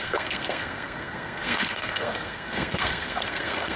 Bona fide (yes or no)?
no